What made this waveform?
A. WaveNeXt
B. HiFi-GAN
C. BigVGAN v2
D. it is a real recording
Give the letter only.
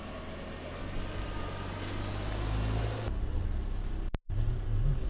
D